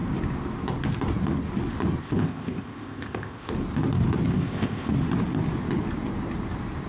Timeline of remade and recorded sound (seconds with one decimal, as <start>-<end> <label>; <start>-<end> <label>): 0.0-2.0 recorded; 2.0-3.5 remade; 3.5-4.3 recorded; 4.3-4.9 remade; 4.9-6.9 recorded